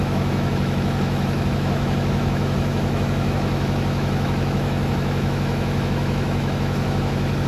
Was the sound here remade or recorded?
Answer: remade